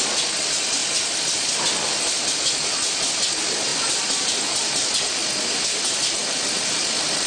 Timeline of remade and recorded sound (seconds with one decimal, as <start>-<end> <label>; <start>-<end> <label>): 0.0-0.8 recorded; 0.8-1.5 remade; 1.5-3.7 recorded; 3.7-4.4 remade; 4.4-6.2 recorded; 6.2-7.3 remade